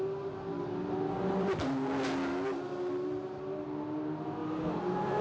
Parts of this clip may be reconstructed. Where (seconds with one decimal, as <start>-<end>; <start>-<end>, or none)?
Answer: none